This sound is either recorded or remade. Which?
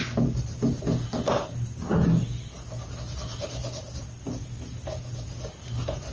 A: recorded